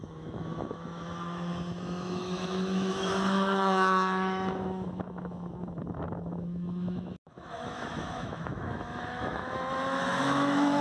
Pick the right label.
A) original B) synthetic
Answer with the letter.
B